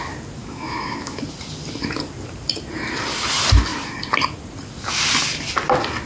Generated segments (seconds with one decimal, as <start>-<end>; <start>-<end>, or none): 0.4-1.2